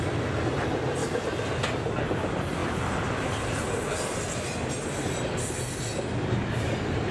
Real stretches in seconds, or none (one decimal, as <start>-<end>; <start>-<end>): 0.0-7.1